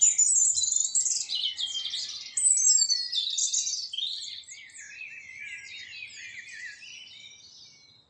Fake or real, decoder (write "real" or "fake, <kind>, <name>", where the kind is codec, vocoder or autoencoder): real